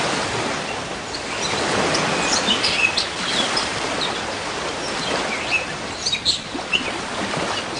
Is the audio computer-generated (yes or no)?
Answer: yes